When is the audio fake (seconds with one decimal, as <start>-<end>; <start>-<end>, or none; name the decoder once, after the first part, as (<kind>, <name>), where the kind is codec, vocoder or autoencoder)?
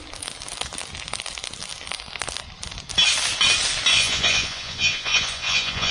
3.9-5.9 (vocoder, Vocos)